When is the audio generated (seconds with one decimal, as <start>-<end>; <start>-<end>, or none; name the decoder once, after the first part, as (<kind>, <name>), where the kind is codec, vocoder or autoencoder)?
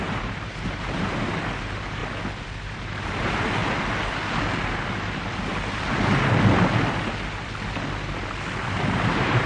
0.0-2.0 (vocoder, BigVGAN v2); 2.6-3.6; 8.7-9.5